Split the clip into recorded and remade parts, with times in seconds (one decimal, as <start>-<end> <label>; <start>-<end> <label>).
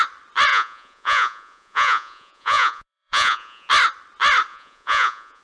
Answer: 0.0-0.5 recorded; 0.5-3.7 remade; 3.7-4.5 recorded; 4.5-5.4 remade